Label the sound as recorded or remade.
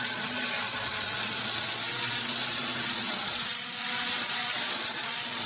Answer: remade